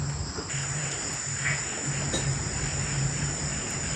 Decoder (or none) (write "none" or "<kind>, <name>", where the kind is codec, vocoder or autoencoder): none